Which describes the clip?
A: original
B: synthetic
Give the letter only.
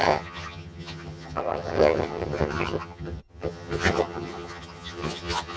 B